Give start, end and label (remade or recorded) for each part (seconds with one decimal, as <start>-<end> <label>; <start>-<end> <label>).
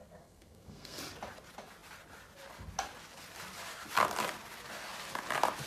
0.0-1.0 remade; 1.0-5.7 recorded